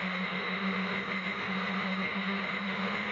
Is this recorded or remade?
remade